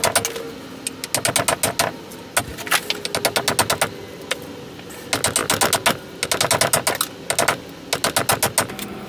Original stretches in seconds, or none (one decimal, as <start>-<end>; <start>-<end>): 0.0-9.1